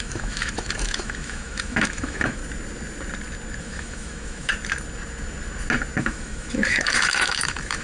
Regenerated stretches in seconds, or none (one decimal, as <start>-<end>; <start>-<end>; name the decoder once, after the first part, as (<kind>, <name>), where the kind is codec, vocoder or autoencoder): 0.0-2.4 (autoencoder, DAC-VAE); 3.6-4.5; 6.0-7.8